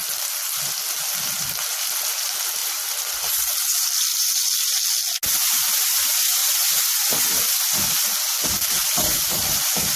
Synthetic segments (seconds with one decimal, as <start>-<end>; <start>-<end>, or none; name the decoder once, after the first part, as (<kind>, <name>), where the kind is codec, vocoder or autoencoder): 8.8-9.5 (vocoder, BigVGAN v2)